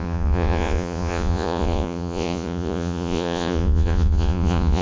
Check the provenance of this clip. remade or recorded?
remade